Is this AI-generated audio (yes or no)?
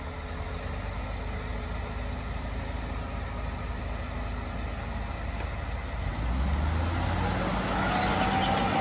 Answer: no